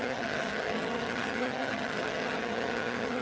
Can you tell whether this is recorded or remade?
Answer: remade